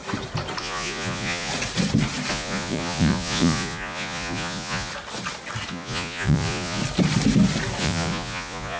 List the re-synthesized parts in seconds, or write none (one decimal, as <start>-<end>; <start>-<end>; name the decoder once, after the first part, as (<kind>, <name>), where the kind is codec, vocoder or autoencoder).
0.6-1.5 (vocoder, Vocos); 2.3-4.9; 5.7-6.8; 7.8-8.8